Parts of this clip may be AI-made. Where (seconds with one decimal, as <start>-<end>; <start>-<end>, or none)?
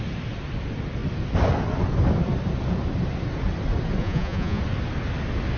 4.0-4.6